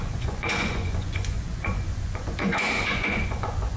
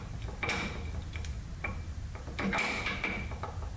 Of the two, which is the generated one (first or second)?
first